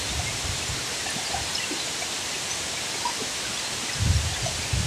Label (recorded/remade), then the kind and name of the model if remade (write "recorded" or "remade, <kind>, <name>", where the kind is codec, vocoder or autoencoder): recorded